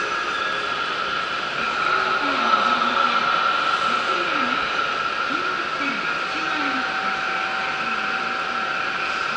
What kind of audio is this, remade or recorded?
recorded